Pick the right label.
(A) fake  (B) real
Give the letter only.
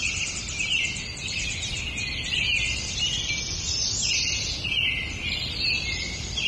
B